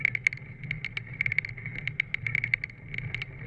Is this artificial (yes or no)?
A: no